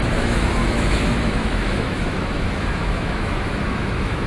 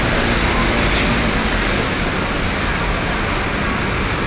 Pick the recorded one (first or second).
second